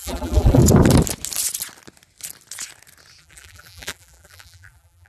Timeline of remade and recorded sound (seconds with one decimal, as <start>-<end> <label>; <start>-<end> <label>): 0.0-0.6 remade; 0.6-3.2 recorded; 3.2-5.1 remade